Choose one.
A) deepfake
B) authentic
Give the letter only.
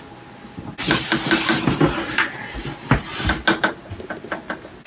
B